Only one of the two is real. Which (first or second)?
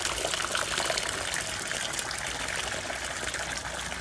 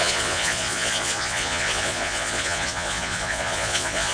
first